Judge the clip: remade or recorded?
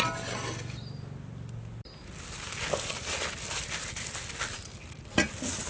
recorded